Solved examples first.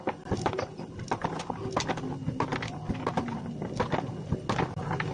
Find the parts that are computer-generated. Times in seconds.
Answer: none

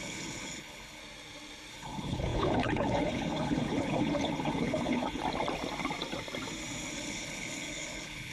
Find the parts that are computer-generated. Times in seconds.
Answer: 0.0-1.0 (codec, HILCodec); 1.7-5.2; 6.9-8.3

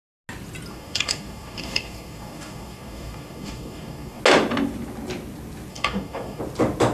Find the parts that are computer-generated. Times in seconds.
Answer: 0.7-4.2 (codec, DAC); 5.7-6.4